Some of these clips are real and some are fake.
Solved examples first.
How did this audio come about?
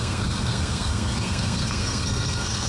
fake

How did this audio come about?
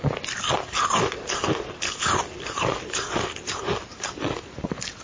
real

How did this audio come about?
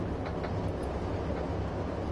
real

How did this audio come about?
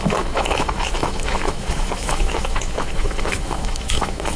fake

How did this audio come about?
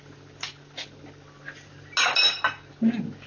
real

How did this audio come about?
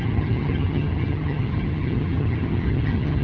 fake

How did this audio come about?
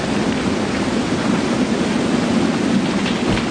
real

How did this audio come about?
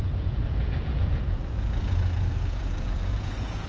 fake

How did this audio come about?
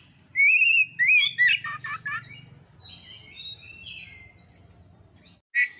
real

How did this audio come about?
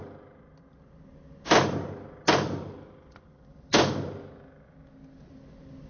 real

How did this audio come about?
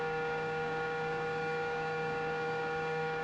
fake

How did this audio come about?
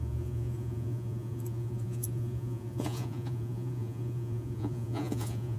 fake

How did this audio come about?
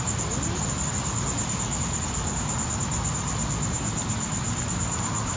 real